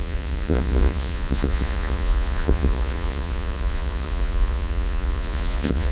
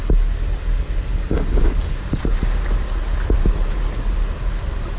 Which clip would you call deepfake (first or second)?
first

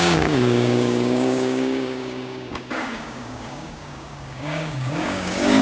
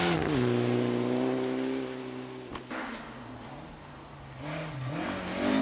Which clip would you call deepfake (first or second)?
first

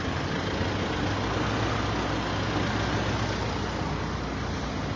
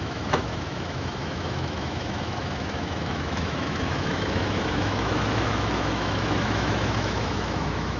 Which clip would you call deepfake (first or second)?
second